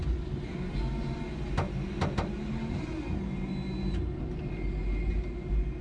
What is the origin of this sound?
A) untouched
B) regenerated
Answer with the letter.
A